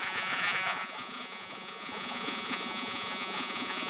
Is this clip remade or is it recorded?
remade